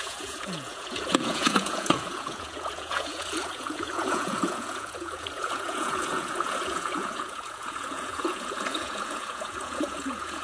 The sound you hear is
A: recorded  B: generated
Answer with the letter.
B